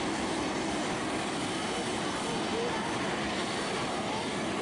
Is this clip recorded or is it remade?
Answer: recorded